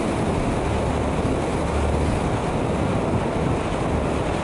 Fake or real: real